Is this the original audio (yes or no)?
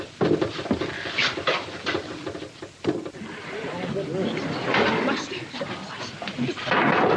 yes